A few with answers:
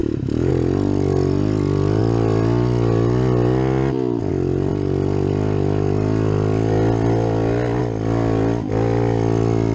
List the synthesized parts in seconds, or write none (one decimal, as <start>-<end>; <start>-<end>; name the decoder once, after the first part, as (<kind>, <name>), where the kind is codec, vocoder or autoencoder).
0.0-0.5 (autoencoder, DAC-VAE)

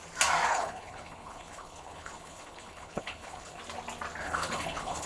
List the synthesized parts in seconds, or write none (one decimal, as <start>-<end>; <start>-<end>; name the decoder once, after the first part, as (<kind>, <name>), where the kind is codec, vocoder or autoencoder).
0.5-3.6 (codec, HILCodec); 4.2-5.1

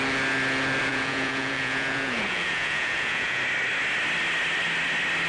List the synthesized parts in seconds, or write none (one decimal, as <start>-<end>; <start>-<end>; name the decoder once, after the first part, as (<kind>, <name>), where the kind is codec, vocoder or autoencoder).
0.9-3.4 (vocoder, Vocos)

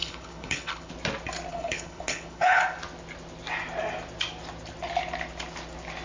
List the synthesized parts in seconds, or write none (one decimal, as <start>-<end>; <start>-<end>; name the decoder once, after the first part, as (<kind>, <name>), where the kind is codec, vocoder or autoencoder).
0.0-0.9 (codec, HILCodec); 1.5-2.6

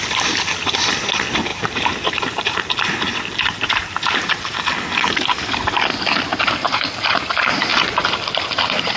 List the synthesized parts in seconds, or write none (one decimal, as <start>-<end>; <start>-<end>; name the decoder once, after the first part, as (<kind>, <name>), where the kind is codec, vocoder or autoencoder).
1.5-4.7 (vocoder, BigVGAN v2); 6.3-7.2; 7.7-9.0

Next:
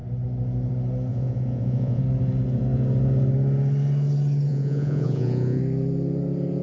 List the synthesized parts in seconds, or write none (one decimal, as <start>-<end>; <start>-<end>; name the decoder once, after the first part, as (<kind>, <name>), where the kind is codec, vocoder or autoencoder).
1.1-2.0 (vocoder, Vocos); 4.5-5.6

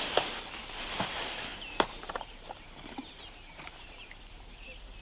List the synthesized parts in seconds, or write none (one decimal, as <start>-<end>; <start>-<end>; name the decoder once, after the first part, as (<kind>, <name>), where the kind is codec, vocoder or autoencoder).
1.5-4.5 (vocoder, BigVGAN v2)

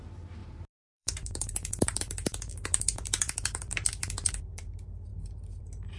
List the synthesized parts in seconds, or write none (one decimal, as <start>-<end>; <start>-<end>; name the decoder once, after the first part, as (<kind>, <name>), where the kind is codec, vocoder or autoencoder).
0.0-6.0 (vocoder, BigVGAN v2)